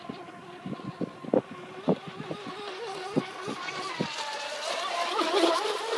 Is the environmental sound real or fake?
real